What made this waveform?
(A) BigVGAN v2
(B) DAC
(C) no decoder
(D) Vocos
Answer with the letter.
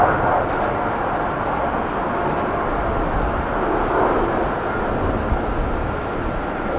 C